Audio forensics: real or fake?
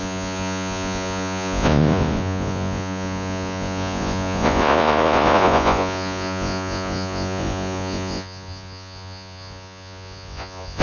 fake